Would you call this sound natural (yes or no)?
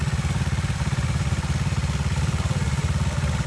yes